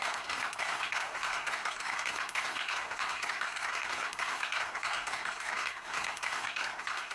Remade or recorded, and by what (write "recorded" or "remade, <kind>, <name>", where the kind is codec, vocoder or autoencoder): remade, codec, SNAC